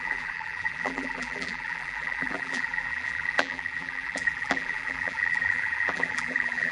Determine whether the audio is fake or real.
fake